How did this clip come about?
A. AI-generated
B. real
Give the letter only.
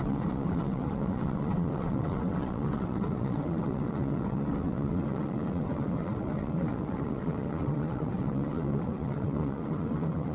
A